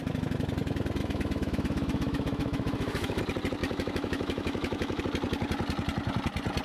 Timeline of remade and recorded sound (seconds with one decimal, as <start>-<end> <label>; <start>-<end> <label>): 0.0-1.0 recorded; 1.0-3.2 remade; 3.2-3.6 recorded; 3.6-5.0 remade; 5.0-6.6 recorded

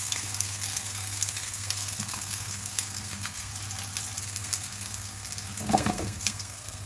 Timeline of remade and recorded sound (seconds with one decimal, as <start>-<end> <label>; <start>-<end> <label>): 0.0-3.5 remade; 3.5-4.2 recorded; 4.2-6.9 remade